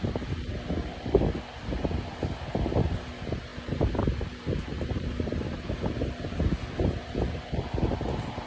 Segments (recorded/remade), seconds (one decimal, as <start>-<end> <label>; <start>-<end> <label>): 0.0-8.5 recorded